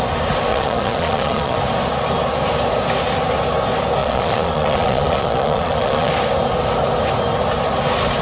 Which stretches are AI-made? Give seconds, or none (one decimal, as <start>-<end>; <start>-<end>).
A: 0.5-1.6; 4.0-6.1